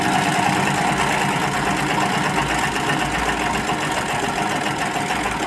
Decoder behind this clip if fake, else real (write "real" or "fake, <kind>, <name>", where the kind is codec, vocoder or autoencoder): real